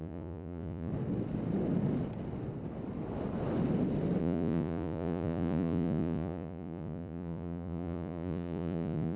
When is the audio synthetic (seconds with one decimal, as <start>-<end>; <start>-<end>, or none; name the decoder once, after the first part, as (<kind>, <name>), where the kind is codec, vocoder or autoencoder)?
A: 0.0-0.9 (vocoder, Vocos); 4.2-9.2